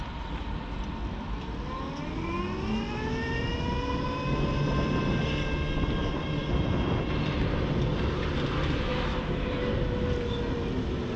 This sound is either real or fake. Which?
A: real